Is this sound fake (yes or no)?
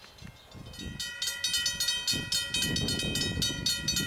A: no